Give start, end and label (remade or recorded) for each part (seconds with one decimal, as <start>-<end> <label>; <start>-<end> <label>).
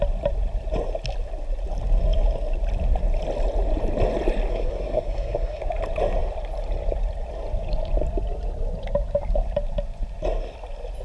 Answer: 0.0-4.5 recorded; 4.5-5.6 remade; 5.6-11.0 recorded